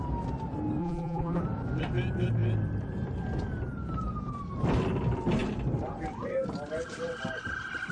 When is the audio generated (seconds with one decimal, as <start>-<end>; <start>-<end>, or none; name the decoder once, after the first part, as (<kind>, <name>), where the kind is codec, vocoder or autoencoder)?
0.8-1.4 (vocoder, BigVGAN v2)